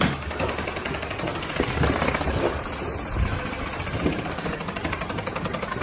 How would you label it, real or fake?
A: real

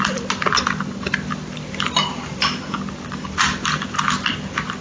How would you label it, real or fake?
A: real